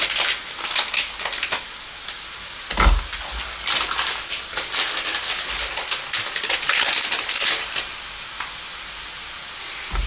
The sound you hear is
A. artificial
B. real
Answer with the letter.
B